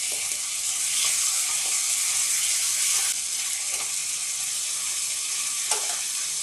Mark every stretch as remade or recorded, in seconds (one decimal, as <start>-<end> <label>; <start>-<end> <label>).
0.0-2.8 recorded; 2.8-3.4 remade; 3.4-4.0 recorded; 4.0-6.0 remade; 6.0-6.4 recorded